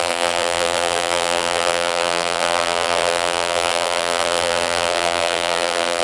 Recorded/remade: remade